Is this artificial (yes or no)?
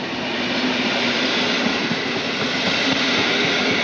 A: no